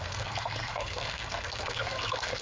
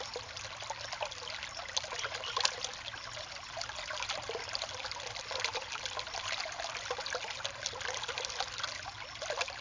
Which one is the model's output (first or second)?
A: first